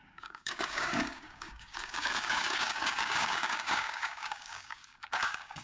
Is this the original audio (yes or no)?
no